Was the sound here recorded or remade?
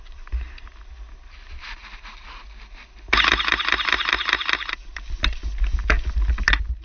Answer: recorded